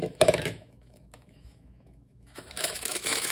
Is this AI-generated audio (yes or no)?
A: yes